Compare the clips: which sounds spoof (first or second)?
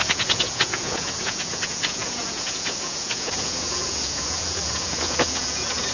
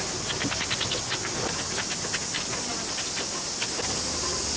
first